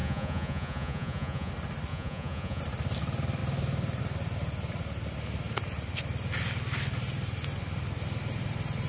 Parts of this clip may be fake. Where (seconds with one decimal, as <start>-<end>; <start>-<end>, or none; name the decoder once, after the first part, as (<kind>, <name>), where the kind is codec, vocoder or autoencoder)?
0.0-1.5 (vocoder, Vocos); 1.9-2.6